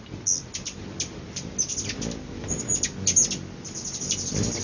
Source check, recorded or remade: recorded